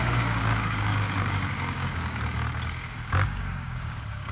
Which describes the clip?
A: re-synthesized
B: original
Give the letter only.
A